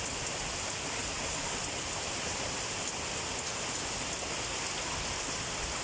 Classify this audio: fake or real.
real